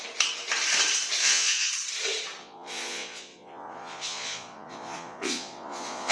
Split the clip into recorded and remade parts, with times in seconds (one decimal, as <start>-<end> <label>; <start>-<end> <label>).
0.0-1.2 recorded; 1.2-1.7 remade; 1.7-2.4 recorded; 2.4-6.1 remade